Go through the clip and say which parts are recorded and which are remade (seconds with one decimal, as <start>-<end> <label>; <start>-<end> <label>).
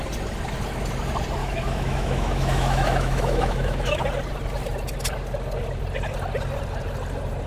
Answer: 0.0-1.4 recorded; 1.4-4.0 remade; 4.0-7.5 recorded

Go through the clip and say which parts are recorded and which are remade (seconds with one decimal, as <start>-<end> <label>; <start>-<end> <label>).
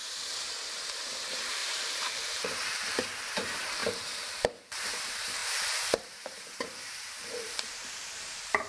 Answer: 0.0-0.7 recorded; 0.7-8.7 remade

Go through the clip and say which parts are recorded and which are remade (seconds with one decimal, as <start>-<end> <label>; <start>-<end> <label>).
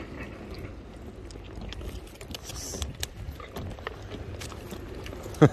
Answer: 0.0-5.5 recorded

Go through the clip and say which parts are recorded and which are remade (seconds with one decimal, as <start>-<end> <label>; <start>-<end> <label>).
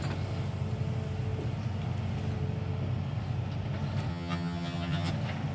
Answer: 0.0-4.1 recorded; 4.1-5.1 remade; 5.1-5.5 recorded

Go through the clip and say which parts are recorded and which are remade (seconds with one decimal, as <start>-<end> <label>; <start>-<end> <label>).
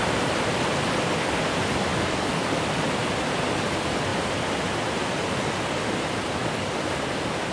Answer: 0.0-1.9 recorded; 1.9-2.6 remade; 2.6-6.4 recorded; 6.4-7.0 remade; 7.0-7.5 recorded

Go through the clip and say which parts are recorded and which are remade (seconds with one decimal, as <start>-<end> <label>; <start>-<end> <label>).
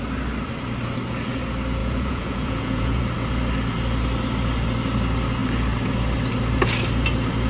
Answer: 0.0-1.8 recorded; 1.8-3.0 remade; 3.0-7.5 recorded